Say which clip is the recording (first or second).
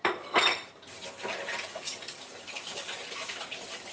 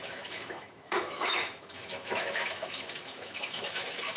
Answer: first